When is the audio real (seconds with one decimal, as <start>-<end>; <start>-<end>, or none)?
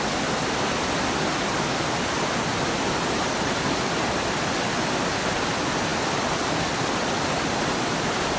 0.0-8.4